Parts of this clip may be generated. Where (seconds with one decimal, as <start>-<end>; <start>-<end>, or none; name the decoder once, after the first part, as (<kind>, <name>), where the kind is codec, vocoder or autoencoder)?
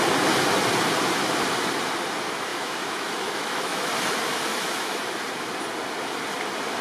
2.5-3.9 (autoencoder, DAC-VAE); 4.5-5.0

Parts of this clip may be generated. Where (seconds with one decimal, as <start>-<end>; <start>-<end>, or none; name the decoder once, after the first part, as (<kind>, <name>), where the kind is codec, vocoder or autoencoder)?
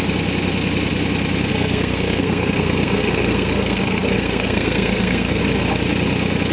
1.5-5.4 (codec, SNAC)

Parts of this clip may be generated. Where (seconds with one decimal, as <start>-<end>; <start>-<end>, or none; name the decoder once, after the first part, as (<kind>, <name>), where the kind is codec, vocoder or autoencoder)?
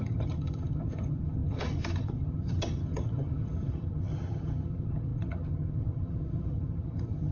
0.0-7.3 (vocoder, HiFi-GAN)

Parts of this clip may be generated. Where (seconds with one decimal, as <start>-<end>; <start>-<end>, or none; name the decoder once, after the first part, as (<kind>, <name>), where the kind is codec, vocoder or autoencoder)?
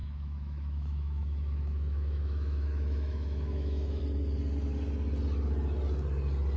0.0-4.0 (autoencoder, DAC-VAE)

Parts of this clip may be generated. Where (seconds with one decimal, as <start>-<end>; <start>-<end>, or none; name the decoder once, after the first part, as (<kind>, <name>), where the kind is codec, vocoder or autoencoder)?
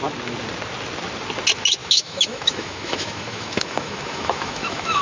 1.8-5.0 (autoencoder, DAC-VAE)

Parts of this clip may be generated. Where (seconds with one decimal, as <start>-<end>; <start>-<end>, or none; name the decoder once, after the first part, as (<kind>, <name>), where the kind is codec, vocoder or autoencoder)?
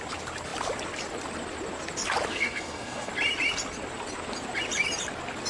2.3-3.1 (codec, SNAC)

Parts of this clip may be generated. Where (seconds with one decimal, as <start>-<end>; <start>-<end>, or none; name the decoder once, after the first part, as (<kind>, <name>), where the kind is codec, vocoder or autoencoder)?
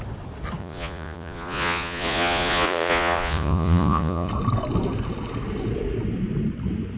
0.6-4.3 (vocoder, Vocos)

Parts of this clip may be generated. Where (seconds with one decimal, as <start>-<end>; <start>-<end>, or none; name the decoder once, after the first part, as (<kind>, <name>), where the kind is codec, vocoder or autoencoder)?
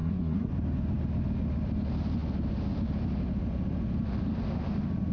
0.0-0.5 (codec, SNAC)